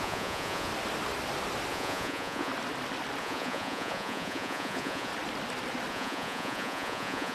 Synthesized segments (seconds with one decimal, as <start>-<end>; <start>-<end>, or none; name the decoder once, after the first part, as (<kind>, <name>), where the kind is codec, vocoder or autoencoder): 0.0-0.7 (vocoder, Vocos); 1.7-2.5; 3.2-5.1; 5.9-7.3